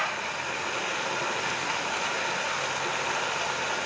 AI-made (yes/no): no